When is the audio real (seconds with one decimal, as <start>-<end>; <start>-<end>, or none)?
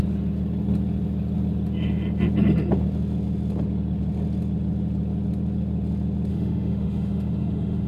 0.0-6.3